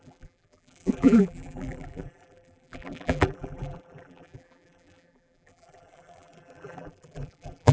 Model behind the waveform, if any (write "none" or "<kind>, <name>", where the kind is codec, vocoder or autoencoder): vocoder, BigVGAN v2